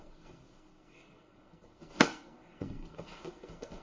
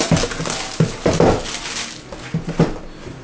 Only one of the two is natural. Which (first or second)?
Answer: second